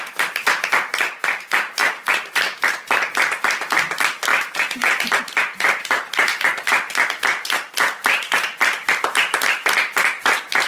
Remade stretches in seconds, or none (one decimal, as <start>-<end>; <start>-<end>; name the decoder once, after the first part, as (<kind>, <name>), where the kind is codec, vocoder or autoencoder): 4.3-5.2 (vocoder, BigVGAN v2)